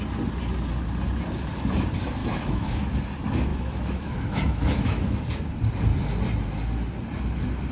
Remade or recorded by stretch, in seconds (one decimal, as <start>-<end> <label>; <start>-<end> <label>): 0.0-2.2 recorded; 2.2-3.0 remade; 3.0-3.5 recorded; 3.5-5.2 remade; 5.2-7.7 recorded